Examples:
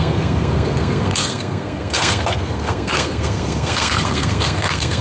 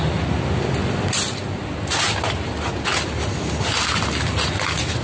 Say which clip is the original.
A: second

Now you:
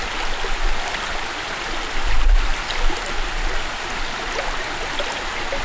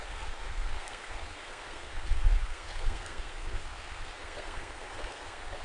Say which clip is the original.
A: first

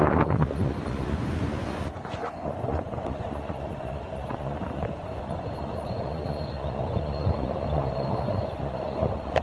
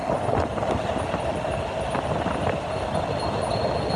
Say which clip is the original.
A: second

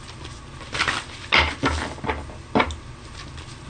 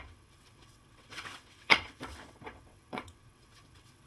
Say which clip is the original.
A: first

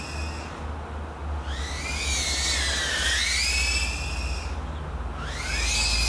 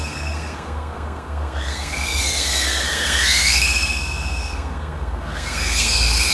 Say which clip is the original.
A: first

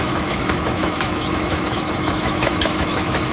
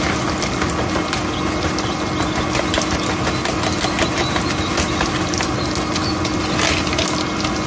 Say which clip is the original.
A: second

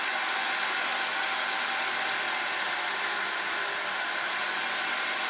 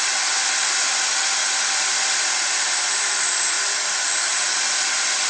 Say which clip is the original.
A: first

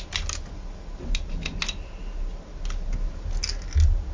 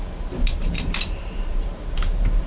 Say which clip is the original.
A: first